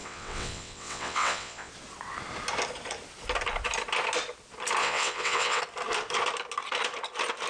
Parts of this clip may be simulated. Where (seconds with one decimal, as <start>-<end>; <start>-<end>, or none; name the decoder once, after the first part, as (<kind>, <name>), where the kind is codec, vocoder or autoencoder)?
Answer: 0.0-1.7 (vocoder, WaveNeXt); 4.8-5.6